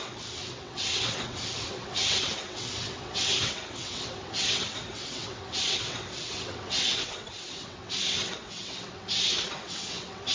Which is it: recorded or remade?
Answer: remade